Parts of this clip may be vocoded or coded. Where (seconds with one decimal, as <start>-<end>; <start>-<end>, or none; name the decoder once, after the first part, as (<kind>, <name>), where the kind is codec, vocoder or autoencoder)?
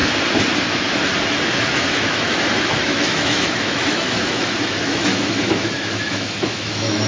1.5-7.1 (autoencoder, DAC-VAE)